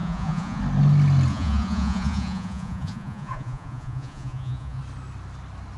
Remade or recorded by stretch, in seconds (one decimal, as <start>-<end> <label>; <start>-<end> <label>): 0.0-0.6 remade; 0.6-1.3 recorded; 1.3-4.8 remade; 4.8-5.8 recorded